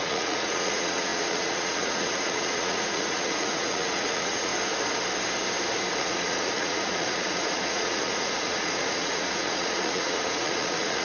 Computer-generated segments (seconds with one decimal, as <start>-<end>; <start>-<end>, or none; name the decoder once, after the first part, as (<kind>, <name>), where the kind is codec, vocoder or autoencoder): 0.0-4.5 (vocoder, Vocos); 6.0-11.0

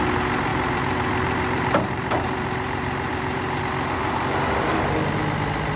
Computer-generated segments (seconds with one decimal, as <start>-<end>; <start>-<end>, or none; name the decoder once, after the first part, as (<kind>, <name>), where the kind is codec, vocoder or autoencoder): 0.5-3.6 (vocoder, BigVGAN v2)